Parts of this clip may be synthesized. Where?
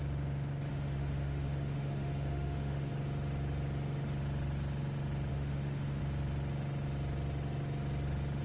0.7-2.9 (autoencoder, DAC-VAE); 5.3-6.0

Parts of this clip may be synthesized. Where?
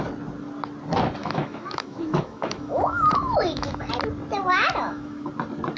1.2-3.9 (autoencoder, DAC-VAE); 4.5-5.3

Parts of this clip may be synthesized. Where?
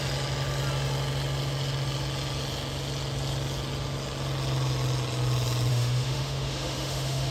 5.7-7.3 (autoencoder, DAC-VAE)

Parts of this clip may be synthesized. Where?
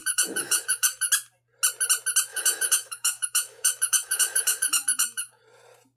0.0-1.1 (autoencoder, DAC-VAE); 2.3-5.4